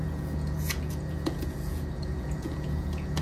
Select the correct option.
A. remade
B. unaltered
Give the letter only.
A